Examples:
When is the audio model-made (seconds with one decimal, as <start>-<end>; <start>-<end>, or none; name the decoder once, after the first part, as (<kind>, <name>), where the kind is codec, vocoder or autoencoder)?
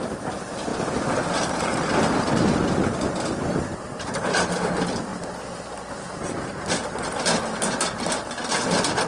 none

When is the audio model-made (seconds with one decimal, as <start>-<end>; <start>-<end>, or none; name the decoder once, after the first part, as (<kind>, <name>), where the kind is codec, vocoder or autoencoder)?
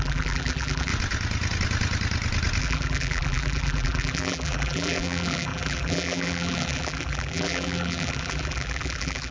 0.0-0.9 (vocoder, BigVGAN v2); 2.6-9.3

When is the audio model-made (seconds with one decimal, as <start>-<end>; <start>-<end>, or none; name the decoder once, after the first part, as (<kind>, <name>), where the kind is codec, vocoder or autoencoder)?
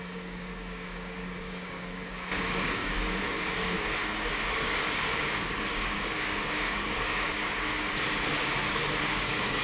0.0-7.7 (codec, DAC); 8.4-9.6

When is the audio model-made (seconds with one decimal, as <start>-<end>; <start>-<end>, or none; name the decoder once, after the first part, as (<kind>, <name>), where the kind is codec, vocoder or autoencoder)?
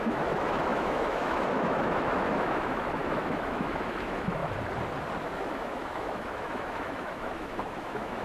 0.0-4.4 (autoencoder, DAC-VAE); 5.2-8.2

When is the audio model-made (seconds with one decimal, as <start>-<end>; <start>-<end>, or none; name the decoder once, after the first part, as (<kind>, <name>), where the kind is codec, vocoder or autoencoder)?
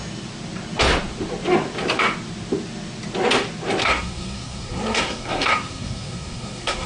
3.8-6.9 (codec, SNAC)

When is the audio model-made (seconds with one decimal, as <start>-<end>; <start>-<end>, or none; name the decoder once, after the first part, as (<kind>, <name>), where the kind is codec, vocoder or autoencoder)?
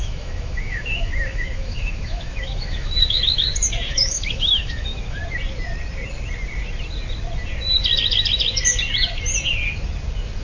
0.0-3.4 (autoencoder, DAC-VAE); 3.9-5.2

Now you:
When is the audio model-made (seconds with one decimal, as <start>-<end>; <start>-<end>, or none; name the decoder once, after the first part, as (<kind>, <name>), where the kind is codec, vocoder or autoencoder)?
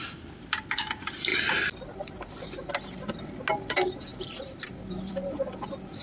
4.1-4.7 (vocoder, BigVGAN v2)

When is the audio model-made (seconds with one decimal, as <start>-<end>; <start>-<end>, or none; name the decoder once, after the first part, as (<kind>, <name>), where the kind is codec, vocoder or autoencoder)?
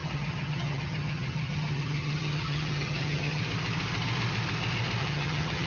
0.0-3.4 (vocoder, HiFi-GAN); 5.0-5.7